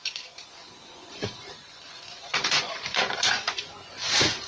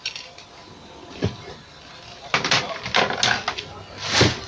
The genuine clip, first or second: second